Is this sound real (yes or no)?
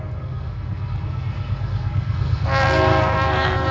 no